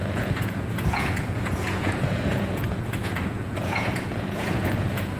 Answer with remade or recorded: remade